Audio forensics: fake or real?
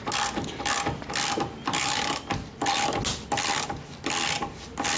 real